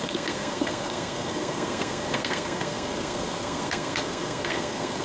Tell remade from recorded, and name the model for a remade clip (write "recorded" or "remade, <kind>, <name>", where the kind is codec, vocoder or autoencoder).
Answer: remade, codec, SNAC